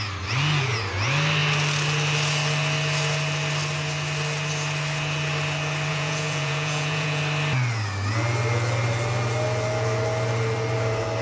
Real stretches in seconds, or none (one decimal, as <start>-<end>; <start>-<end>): 0.0-5.9; 7.2-11.2